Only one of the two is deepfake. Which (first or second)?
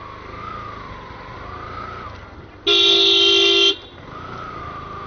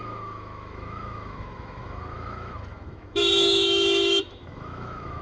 second